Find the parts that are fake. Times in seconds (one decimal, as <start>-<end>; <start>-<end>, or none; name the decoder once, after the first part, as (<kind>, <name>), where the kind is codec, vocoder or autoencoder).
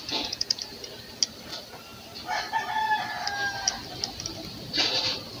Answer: 0.0-0.6 (vocoder, Vocos)